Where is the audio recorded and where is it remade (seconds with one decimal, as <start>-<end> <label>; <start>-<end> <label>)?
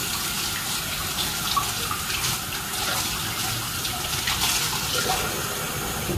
0.0-6.2 recorded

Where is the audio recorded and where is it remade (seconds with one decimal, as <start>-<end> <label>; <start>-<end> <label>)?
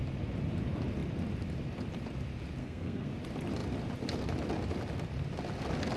0.0-2.6 recorded; 2.6-3.1 remade; 3.1-6.0 recorded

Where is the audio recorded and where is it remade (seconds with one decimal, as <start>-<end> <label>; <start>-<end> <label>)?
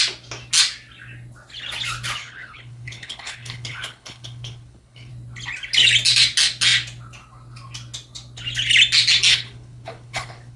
0.0-2.2 recorded; 2.2-5.1 remade; 5.1-9.3 recorded; 9.3-10.6 remade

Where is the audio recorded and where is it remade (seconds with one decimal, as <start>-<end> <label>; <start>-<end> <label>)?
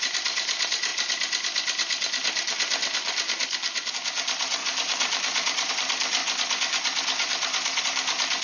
0.0-0.9 remade; 0.9-3.9 recorded; 3.9-6.2 remade; 6.2-7.8 recorded; 7.8-8.4 remade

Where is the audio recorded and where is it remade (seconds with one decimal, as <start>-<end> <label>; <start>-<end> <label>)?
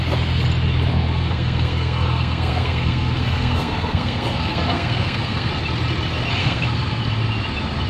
0.0-0.9 recorded; 0.9-5.5 remade; 5.5-6.4 recorded; 6.4-7.0 remade; 7.0-7.9 recorded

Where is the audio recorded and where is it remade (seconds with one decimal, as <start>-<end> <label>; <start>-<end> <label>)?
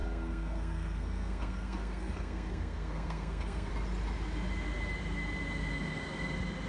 0.0-3.7 remade; 3.7-6.7 recorded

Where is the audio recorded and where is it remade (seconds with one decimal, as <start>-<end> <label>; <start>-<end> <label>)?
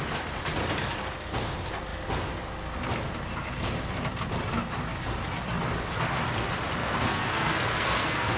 0.0-6.8 recorded; 6.8-8.4 remade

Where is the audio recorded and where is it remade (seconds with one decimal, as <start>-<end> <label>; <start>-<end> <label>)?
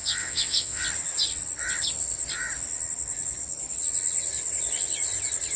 0.0-0.8 remade; 0.8-5.6 recorded